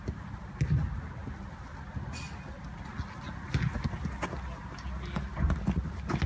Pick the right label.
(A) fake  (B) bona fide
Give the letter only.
B